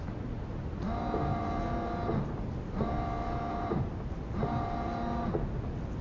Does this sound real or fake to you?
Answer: real